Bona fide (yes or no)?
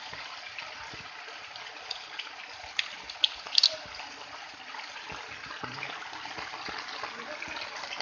yes